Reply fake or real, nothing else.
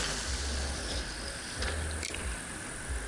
real